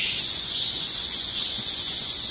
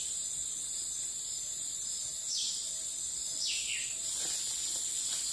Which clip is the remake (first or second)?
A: first